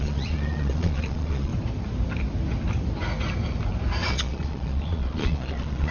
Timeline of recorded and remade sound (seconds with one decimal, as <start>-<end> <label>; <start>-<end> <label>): 0.0-1.5 remade; 1.5-4.1 recorded; 4.1-5.9 remade